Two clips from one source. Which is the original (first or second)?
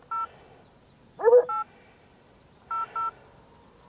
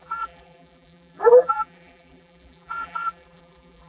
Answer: first